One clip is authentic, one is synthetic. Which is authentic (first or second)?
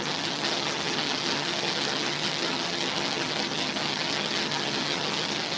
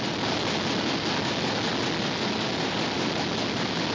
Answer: second